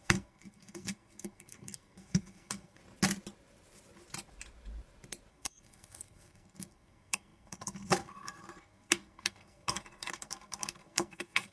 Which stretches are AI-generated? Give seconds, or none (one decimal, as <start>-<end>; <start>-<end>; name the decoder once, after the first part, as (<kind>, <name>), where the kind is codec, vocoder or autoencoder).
0.0-2.8 (codec, SNAC); 5.3-11.5